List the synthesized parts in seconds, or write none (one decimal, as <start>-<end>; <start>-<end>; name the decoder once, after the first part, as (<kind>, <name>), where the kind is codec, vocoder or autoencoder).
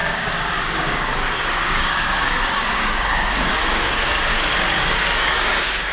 0.0-4.3 (codec, DAC); 5.0-5.9